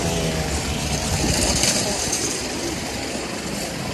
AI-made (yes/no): yes